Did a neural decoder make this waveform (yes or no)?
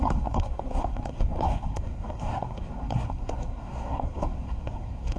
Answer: yes